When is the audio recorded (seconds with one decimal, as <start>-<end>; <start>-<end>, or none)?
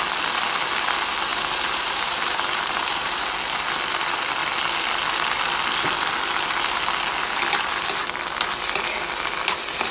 0.0-1.3; 3.3-9.9